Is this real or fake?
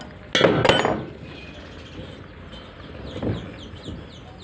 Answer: real